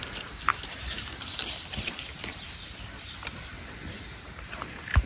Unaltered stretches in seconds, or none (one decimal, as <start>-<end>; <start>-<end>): 0.0-0.5; 2.2-3.5; 4.5-5.1